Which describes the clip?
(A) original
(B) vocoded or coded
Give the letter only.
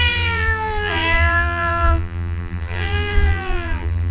B